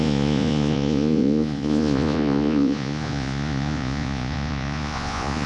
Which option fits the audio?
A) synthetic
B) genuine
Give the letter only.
A